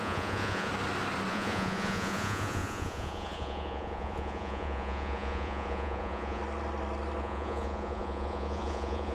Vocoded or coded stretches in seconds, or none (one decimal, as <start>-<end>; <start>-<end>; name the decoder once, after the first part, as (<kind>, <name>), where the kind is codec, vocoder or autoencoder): 0.0-0.7 (vocoder, Vocos); 1.3-6.4; 7.2-9.1